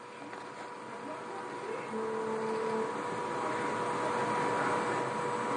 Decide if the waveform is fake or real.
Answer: real